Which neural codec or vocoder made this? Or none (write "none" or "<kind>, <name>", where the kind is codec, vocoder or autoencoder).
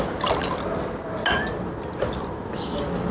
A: none